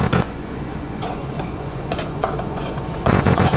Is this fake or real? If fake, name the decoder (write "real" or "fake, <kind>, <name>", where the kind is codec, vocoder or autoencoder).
fake, vocoder, Vocos